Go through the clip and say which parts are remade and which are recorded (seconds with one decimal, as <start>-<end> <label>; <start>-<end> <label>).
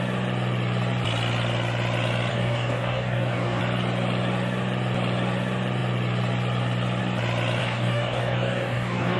0.0-2.3 recorded; 2.3-3.6 remade; 3.6-7.6 recorded; 7.6-9.2 remade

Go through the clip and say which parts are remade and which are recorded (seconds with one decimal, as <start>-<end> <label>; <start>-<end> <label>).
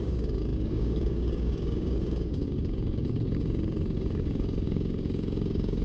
0.0-5.8 remade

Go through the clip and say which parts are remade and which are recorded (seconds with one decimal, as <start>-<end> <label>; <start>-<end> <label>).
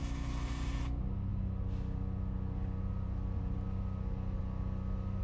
0.0-5.2 recorded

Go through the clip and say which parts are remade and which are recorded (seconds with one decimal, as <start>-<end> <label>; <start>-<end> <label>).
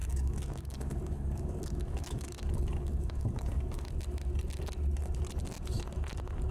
0.0-3.9 remade; 3.9-6.5 recorded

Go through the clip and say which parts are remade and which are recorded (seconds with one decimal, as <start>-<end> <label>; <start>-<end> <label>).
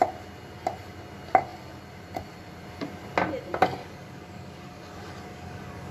0.0-3.8 recorded; 3.8-5.9 remade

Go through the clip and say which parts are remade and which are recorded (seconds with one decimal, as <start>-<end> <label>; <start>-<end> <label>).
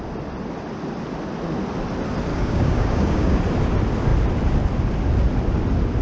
0.0-2.3 recorded; 2.3-3.4 remade; 3.4-6.0 recorded